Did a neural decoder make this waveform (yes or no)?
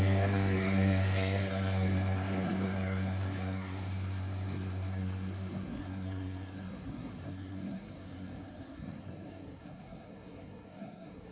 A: yes